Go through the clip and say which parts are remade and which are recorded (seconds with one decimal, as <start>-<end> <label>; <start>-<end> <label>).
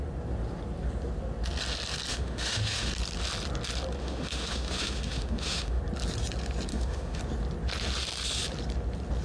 0.0-2.1 recorded; 2.1-2.9 remade; 2.9-4.0 recorded; 4.0-5.8 remade; 5.8-6.7 recorded; 6.7-7.2 remade; 7.2-9.2 recorded